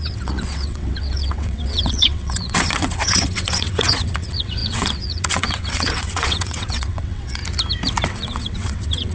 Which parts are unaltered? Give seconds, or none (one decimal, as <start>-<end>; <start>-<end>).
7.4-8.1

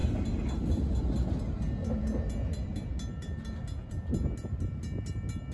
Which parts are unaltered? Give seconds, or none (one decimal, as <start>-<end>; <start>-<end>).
0.0-5.5

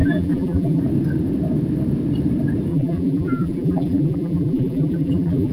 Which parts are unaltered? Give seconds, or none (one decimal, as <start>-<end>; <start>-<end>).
0.8-2.7

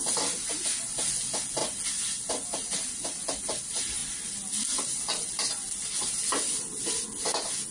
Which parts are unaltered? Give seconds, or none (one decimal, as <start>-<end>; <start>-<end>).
0.0-7.7

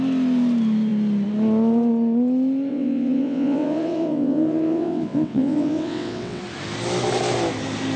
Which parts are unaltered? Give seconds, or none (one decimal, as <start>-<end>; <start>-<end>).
0.0-2.7; 6.4-8.0